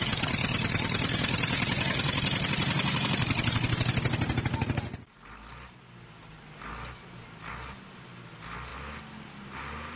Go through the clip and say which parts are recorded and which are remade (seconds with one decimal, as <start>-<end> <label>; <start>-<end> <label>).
0.0-10.0 recorded